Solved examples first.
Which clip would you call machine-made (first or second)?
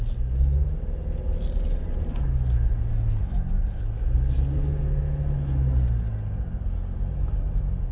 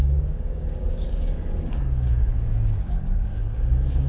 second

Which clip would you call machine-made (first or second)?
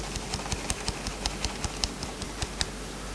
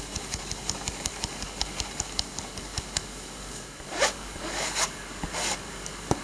second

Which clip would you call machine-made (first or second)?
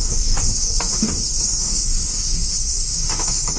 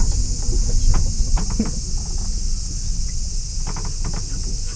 first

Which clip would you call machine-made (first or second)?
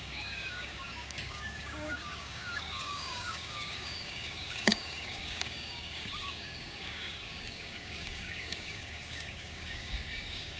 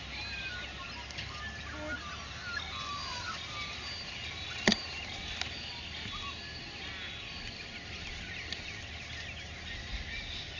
first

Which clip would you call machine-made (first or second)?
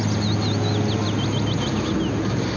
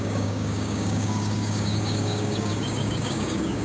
second